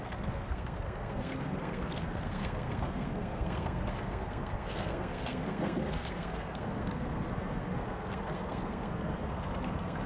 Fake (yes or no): yes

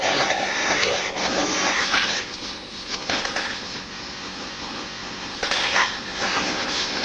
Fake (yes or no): yes